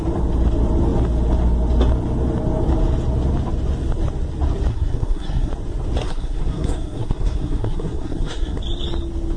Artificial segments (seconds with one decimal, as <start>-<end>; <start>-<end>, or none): 4.7-5.5; 6.0-8.6